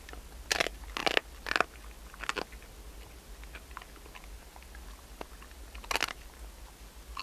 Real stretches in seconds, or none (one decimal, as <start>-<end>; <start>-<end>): 0.0-7.2